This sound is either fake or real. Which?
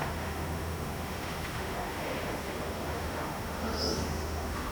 fake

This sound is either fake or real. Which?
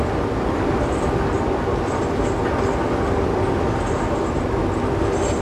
real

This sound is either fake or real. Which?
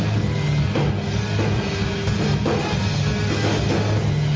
real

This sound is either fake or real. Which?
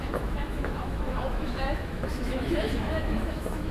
fake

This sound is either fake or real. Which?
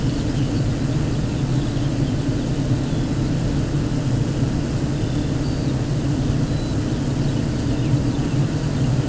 real